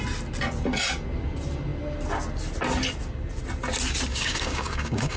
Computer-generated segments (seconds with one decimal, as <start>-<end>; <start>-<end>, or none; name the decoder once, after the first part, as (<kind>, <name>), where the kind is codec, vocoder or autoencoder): 4.1-5.2 (codec, DAC)